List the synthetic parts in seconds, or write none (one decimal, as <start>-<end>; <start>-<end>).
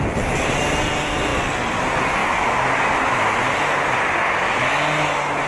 none